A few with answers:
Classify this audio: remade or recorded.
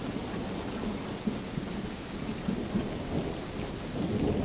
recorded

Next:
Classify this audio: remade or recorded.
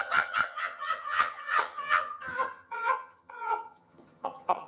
remade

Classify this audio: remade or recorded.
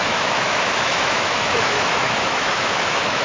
remade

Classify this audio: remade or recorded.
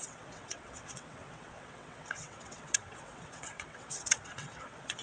remade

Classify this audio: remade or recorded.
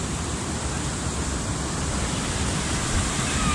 recorded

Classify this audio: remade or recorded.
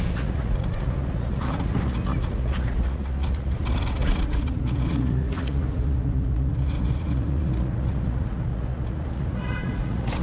remade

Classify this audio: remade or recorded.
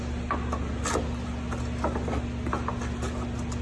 recorded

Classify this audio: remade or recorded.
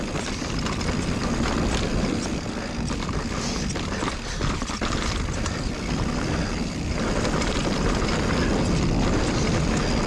recorded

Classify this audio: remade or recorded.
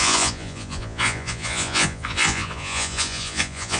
remade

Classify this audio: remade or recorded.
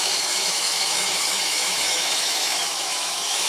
remade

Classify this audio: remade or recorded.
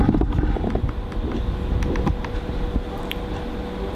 recorded